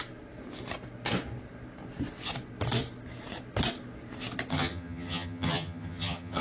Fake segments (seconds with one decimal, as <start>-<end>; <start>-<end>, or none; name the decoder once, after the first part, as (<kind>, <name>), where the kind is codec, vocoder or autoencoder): 4.5-6.4 (vocoder, HiFi-GAN)